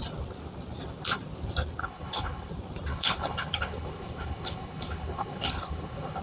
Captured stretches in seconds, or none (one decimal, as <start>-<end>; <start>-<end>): 0.0-1.8; 2.5-2.9